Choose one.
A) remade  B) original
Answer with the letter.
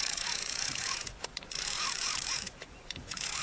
A